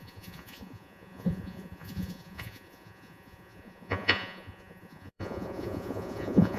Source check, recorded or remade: remade